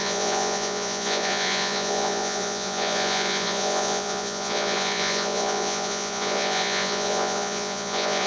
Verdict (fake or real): fake